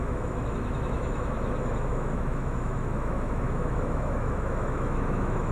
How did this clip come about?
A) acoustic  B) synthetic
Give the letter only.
B